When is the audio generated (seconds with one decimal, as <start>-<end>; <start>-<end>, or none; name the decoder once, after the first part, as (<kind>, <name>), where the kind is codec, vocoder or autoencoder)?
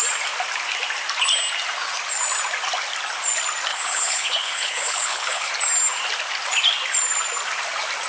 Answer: 3.7-5.5 (codec, HILCodec)